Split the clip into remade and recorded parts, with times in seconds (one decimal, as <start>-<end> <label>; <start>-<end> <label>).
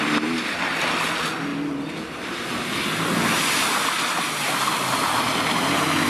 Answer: 0.0-6.1 recorded